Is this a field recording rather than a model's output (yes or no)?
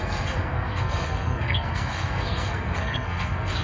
no